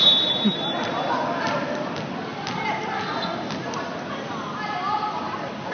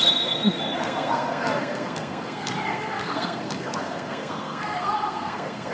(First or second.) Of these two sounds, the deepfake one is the second